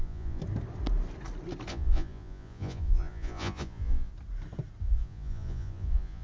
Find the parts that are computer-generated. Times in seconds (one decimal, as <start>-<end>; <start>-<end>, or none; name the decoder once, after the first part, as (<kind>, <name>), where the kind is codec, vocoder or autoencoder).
0.0-0.4 (vocoder, Vocos); 1.7-4.1; 4.8-6.2